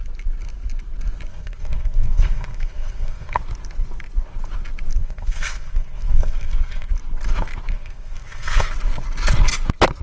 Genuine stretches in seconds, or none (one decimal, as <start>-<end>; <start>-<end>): 0.0-1.3; 3.4-5.0; 6.9-7.7; 8.7-10.0